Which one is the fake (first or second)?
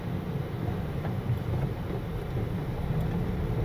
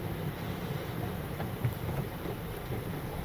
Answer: second